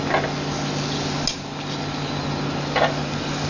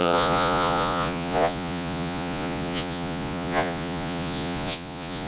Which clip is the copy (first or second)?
second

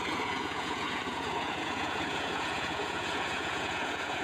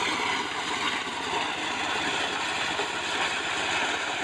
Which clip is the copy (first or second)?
first